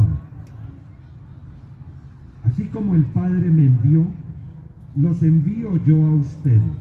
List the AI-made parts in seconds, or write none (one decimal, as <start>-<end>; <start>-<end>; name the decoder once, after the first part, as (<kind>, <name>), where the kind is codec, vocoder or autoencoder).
none